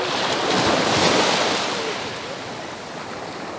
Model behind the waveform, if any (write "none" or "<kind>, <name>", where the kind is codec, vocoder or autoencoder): vocoder, BigVGAN v2